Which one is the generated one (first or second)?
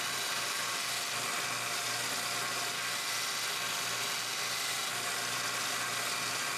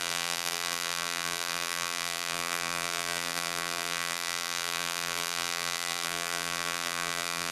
second